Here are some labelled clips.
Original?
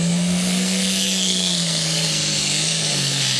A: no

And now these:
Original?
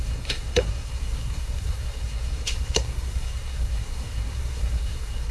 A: no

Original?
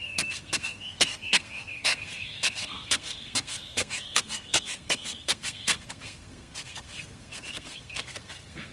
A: no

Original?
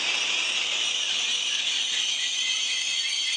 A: yes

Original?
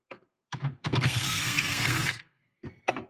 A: no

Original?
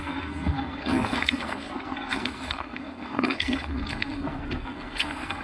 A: no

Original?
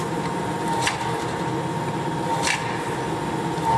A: yes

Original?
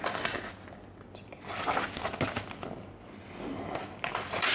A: yes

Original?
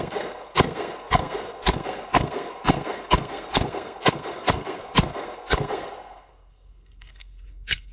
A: no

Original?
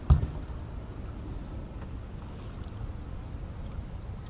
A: yes